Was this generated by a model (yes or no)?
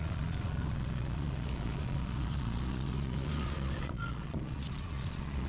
yes